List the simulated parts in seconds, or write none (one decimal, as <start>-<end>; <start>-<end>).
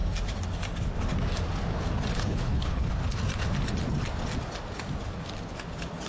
2.2-2.9